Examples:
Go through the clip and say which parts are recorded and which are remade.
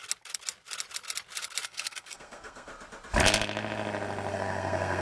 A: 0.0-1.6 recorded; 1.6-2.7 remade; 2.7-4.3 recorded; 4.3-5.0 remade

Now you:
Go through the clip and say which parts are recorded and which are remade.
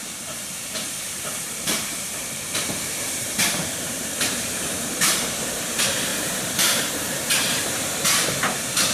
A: 0.0-8.9 remade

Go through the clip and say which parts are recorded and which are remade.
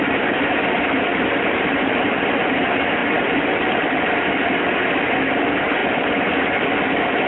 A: 0.0-1.1 recorded; 1.1-2.6 remade; 2.6-7.3 recorded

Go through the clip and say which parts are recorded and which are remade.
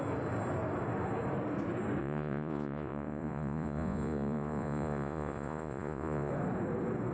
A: 0.0-2.0 recorded; 2.0-6.3 remade; 6.3-7.1 recorded